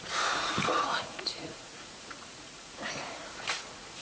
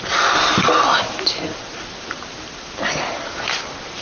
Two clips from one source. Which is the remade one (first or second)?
first